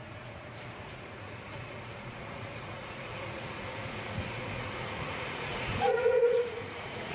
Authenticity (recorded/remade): remade